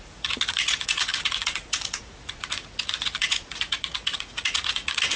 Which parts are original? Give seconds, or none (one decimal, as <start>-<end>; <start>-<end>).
none